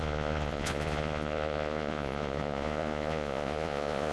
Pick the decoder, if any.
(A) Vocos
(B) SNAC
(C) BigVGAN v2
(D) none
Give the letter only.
A